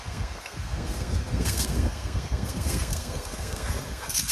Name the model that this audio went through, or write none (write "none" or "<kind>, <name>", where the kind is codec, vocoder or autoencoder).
codec, SNAC